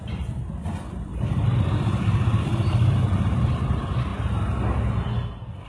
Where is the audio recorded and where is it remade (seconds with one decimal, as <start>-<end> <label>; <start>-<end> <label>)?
0.0-4.1 remade; 4.1-5.7 recorded